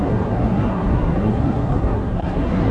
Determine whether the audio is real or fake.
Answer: fake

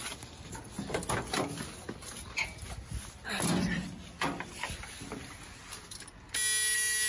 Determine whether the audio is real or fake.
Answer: real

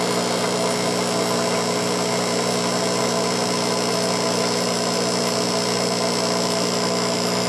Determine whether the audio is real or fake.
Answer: real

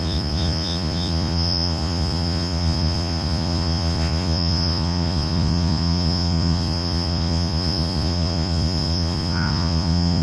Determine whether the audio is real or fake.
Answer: fake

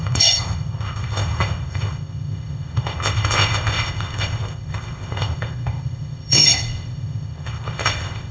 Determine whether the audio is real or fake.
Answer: fake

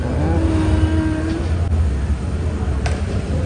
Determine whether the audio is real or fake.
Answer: real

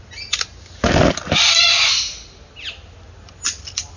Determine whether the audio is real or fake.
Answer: real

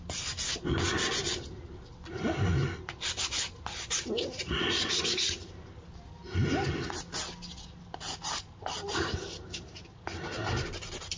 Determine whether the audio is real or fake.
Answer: real